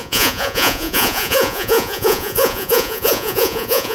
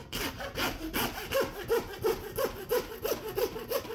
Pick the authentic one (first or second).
second